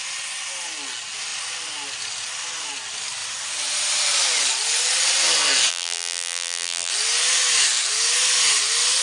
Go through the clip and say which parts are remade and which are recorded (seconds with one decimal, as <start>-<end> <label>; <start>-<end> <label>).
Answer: 0.0-5.7 recorded; 5.7-6.9 remade; 6.9-9.0 recorded